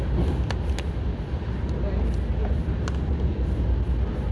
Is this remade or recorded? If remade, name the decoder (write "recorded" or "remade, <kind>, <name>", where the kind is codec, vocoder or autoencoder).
recorded